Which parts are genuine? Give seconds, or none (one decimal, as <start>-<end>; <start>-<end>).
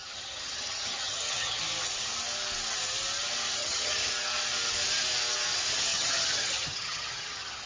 1.6-3.6; 4.1-5.9